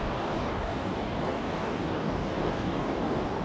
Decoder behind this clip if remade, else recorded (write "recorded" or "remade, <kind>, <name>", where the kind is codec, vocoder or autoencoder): remade, codec, DAC